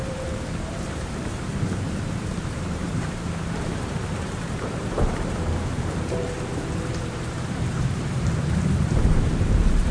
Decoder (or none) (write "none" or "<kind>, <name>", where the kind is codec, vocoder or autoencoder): vocoder, BigVGAN v2